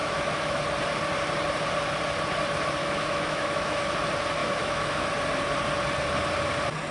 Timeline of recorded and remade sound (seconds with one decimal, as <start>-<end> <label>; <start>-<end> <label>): 0.0-0.6 remade; 0.6-2.8 recorded; 2.8-3.9 remade; 3.9-4.4 recorded; 4.4-5.1 remade; 5.1-6.9 recorded